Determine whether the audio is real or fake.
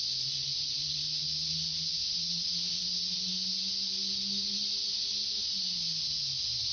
real